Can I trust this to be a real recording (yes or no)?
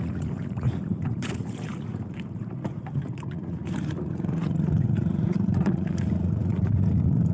no